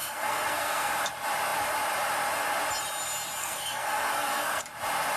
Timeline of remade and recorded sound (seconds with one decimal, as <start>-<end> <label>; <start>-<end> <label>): 0.0-0.9 remade; 0.9-3.4 recorded; 3.4-4.6 remade; 4.6-5.2 recorded